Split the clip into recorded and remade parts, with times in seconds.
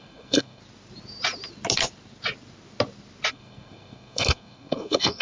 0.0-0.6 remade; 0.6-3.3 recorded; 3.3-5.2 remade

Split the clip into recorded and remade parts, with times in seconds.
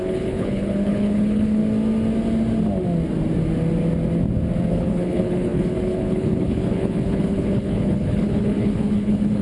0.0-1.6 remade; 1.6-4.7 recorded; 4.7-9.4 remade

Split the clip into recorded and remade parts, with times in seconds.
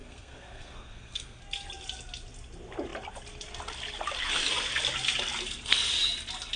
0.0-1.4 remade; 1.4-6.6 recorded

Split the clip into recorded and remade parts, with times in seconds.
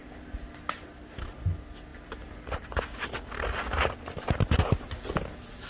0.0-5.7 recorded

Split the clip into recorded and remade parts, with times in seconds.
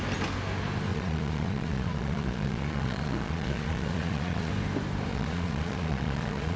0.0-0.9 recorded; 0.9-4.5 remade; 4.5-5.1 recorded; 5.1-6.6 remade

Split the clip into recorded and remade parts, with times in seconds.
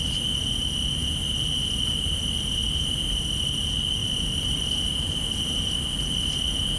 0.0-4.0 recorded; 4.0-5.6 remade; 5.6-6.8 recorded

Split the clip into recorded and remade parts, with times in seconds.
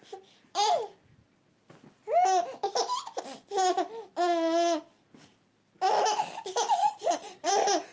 0.0-6.8 recorded; 6.8-7.5 remade; 7.5-7.9 recorded